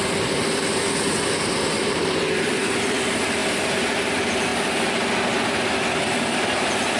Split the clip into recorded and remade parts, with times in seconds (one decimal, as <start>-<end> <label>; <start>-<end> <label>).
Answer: 0.0-0.8 remade; 0.8-2.0 recorded; 2.0-3.4 remade; 3.4-4.1 recorded; 4.1-4.5 remade; 4.5-6.0 recorded; 6.0-7.0 remade